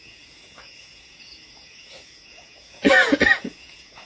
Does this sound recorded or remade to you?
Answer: remade